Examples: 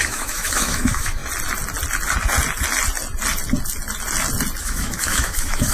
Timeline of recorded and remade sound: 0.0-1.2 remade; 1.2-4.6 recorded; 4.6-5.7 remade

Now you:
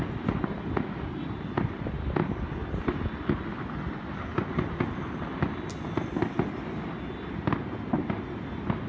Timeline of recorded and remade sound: 0.0-8.9 recorded

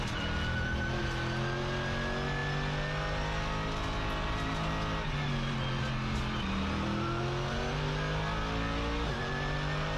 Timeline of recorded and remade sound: 0.0-10.0 recorded

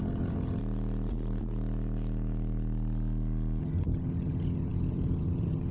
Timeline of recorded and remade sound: 0.0-0.6 remade; 0.6-3.6 recorded; 3.6-5.7 remade

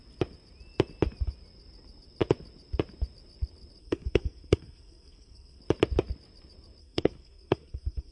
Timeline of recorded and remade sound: 0.0-3.8 recorded; 3.8-5.6 remade; 5.6-6.8 recorded; 6.8-8.1 remade

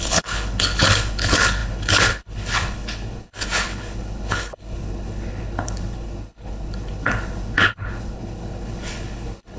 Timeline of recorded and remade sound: 0.0-9.6 remade